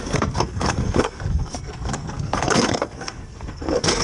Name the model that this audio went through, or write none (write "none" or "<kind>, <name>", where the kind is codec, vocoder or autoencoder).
codec, SNAC